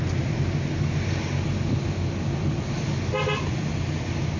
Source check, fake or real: real